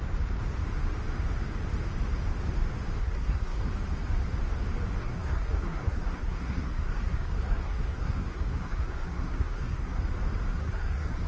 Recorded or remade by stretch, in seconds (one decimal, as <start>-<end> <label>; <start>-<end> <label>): 0.0-3.0 recorded; 3.0-3.7 remade; 3.7-5.0 recorded; 5.0-10.0 remade; 10.0-10.5 recorded; 10.5-11.3 remade